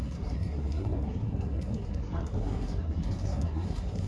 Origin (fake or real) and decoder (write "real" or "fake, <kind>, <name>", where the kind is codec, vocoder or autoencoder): fake, codec, SNAC